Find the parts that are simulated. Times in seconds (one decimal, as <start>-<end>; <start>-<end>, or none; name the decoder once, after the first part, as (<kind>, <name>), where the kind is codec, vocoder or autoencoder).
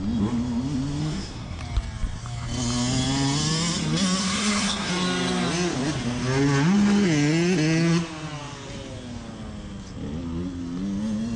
1.0-1.6 (codec, SNAC); 4.2-4.9